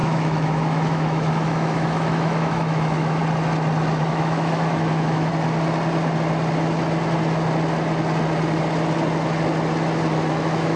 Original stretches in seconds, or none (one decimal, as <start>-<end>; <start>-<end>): 3.2-4.0; 5.3-10.3